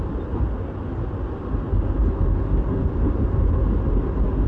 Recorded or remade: recorded